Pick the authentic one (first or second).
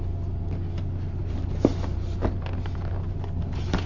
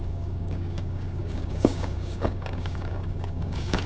first